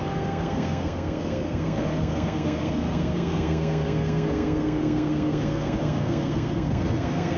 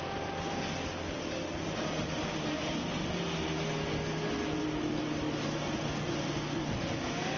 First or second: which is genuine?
second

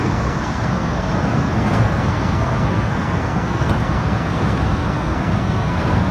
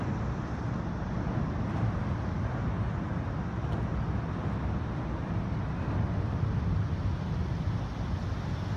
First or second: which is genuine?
second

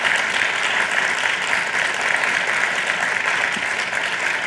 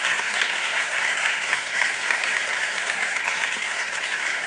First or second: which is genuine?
first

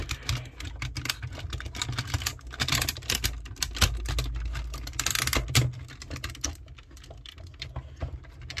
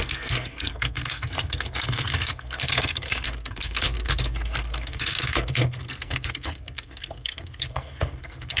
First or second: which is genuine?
first